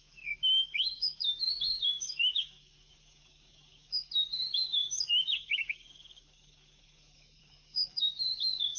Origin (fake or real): fake